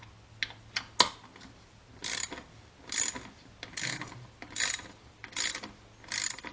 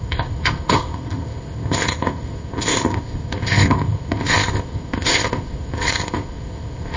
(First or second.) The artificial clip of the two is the second